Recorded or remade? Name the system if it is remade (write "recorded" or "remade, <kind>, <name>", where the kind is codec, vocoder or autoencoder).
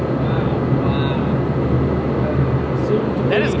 recorded